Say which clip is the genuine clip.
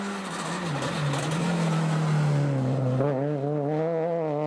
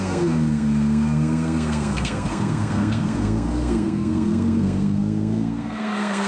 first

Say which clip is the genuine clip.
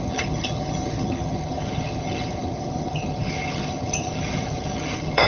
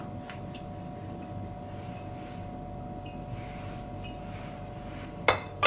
second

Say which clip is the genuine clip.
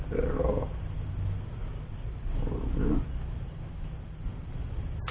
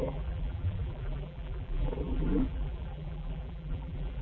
first